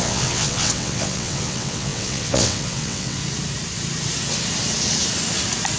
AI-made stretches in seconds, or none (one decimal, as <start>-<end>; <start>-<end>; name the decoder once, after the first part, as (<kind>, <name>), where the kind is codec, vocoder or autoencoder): 0.0-3.2 (vocoder, WaveNeXt)